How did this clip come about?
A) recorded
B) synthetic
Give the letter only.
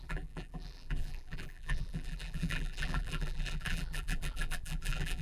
B